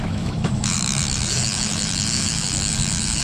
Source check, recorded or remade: remade